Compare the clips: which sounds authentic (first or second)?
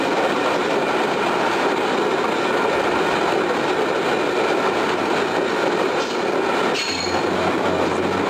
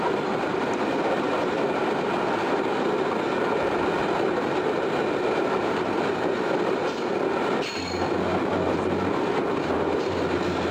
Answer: first